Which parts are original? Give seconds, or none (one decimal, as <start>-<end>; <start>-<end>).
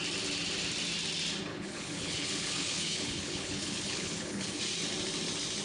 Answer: 0.0-1.5; 4.6-5.6